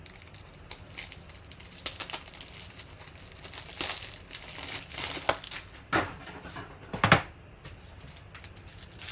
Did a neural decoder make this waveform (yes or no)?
no